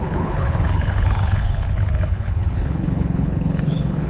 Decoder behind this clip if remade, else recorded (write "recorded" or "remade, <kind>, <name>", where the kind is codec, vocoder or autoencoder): remade, codec, HILCodec